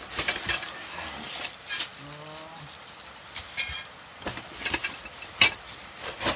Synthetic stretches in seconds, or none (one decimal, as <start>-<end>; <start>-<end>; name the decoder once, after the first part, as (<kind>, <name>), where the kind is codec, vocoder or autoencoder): none